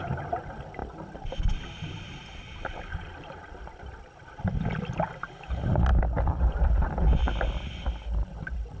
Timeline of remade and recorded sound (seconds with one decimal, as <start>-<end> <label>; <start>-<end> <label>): 0.0-8.8 recorded